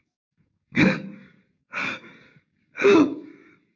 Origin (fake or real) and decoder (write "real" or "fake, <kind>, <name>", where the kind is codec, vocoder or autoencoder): fake, codec, DAC